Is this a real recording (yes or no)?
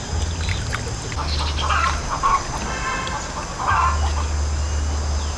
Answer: yes